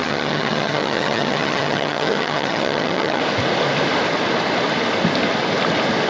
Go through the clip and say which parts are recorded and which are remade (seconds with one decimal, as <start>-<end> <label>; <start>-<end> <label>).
0.0-3.2 remade; 3.2-6.1 recorded